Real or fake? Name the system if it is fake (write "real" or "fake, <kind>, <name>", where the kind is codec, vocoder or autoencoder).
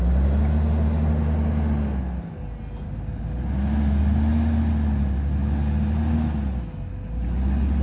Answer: real